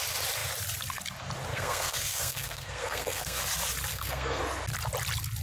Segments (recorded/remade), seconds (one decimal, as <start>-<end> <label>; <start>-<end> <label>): 0.0-1.5 recorded; 1.5-3.4 remade; 3.4-3.9 recorded; 3.9-4.4 remade; 4.4-5.4 recorded